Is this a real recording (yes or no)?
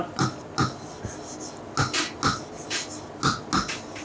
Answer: yes